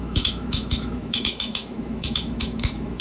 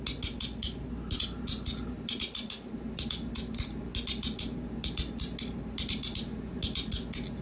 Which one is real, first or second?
second